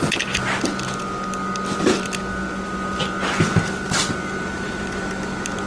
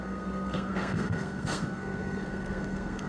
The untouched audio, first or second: first